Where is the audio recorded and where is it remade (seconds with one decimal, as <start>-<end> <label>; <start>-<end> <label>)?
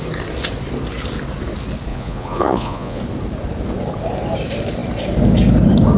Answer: 0.0-1.9 recorded; 1.9-3.0 remade; 3.0-6.0 recorded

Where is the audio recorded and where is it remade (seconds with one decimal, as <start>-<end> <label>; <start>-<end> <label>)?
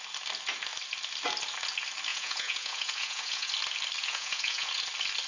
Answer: 0.0-2.1 recorded; 2.1-3.5 remade; 3.5-4.0 recorded; 4.0-4.7 remade; 4.7-5.3 recorded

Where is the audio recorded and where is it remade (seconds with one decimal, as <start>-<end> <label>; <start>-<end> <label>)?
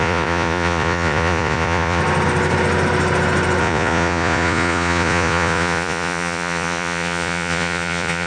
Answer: 0.0-2.0 remade; 2.0-3.6 recorded; 3.6-8.3 remade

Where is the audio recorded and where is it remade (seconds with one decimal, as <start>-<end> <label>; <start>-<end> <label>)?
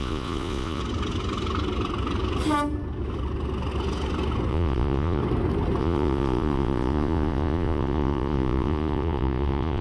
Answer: 0.0-0.8 remade; 0.8-4.5 recorded; 4.5-5.2 remade; 5.2-5.8 recorded; 5.8-9.8 remade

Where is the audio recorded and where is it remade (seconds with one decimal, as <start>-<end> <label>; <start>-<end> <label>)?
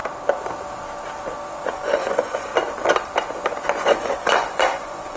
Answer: 0.0-1.7 recorded; 1.7-2.5 remade; 2.5-3.8 recorded; 3.8-5.2 remade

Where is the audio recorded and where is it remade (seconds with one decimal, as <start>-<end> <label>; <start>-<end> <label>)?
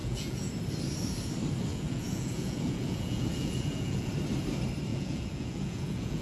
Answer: 0.0-0.5 remade; 0.5-1.7 recorded; 1.7-4.1 remade; 4.1-4.9 recorded; 4.9-6.2 remade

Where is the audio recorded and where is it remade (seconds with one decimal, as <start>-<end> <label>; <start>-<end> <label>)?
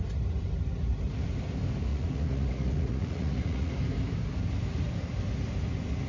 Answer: 0.0-1.9 recorded; 1.9-3.7 remade; 3.7-6.1 recorded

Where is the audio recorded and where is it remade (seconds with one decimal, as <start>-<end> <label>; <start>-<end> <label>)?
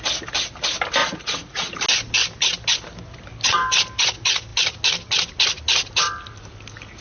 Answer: 0.0-1.0 recorded; 1.0-1.7 remade; 1.7-7.0 recorded